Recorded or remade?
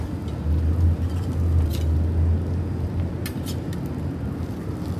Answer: recorded